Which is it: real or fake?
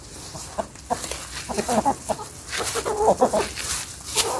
real